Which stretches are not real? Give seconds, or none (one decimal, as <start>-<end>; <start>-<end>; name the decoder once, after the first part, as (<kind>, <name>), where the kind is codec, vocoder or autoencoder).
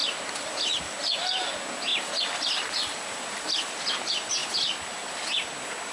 none